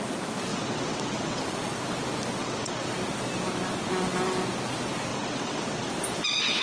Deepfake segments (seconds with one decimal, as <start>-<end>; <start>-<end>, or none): 0.5-1.4; 2.4-2.9; 5.1-5.9